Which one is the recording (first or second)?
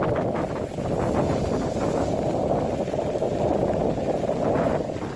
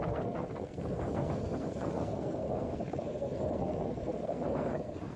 first